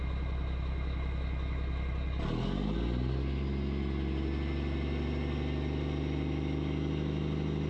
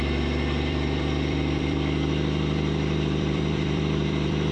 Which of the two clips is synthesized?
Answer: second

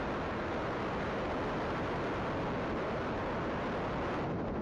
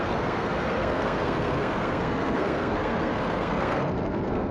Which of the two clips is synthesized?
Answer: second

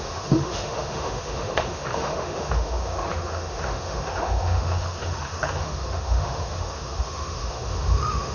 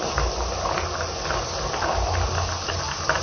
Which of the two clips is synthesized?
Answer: first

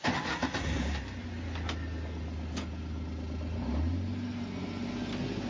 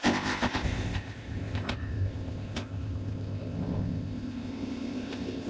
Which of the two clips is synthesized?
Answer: second